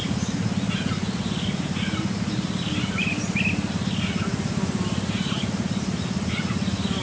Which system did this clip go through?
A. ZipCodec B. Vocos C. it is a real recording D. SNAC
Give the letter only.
C